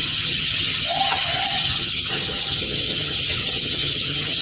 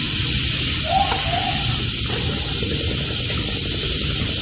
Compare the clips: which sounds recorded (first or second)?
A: second